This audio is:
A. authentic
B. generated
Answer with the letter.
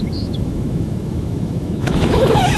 B